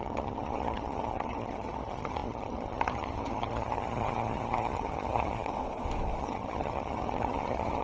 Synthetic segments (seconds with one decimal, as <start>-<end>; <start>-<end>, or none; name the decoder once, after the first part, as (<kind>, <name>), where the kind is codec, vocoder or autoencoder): 0.0-5.5 (vocoder, HiFi-GAN); 6.2-7.8